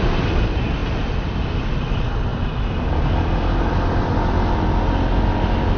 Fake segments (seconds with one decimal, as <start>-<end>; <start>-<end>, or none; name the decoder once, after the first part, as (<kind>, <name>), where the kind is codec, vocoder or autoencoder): none